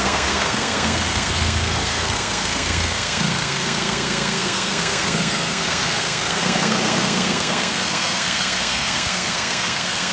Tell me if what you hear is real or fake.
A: fake